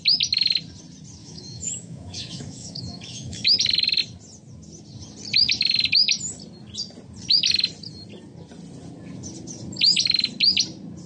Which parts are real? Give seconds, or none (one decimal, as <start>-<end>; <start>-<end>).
0.0-1.2; 3.6-11.1